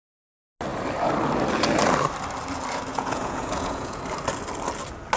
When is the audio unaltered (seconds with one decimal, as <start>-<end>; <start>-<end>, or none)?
0.0-2.9; 4.0-5.2